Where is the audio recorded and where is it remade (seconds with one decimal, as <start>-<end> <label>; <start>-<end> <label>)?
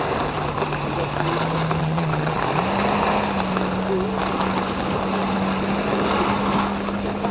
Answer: 0.0-1.8 recorded; 1.8-2.4 remade; 2.4-7.3 recorded